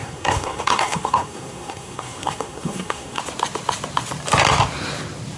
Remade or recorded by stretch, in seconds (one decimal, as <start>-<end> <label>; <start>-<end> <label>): 0.0-3.2 remade; 3.2-5.4 recorded